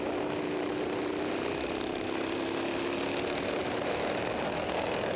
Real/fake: real